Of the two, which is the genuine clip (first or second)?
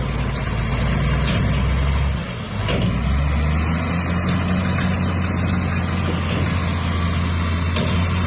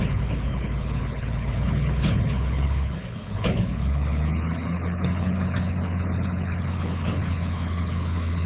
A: first